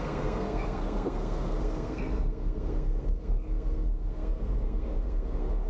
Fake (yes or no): yes